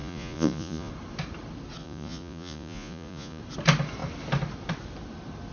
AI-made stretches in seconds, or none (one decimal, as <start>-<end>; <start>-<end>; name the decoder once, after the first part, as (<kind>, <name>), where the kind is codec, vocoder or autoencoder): 0.0-0.9 (vocoder, Vocos); 1.8-3.4